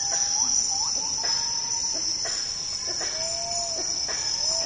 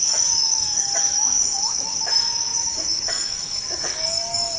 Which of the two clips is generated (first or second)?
second